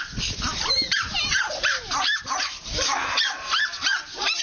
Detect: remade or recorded remade